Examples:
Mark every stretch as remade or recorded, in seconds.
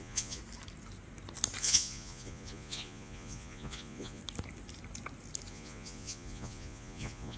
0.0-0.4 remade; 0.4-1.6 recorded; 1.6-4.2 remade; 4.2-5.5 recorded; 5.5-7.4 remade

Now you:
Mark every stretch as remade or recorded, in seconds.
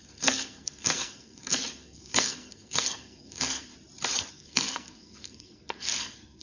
0.0-3.7 remade; 3.7-4.3 recorded; 4.3-6.4 remade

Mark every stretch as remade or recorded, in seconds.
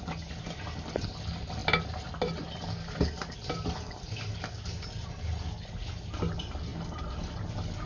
0.0-7.9 recorded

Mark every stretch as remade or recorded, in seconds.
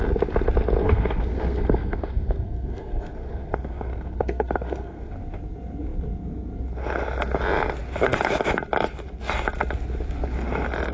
0.0-0.8 recorded; 0.8-5.1 remade; 5.1-10.9 recorded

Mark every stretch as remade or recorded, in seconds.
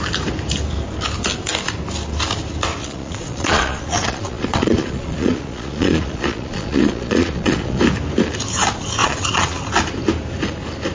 0.0-2.8 recorded; 2.8-7.8 remade; 7.8-9.0 recorded; 9.0-9.6 remade; 9.6-10.9 recorded